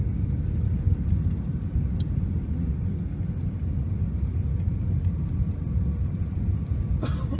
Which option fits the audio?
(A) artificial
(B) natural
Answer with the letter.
B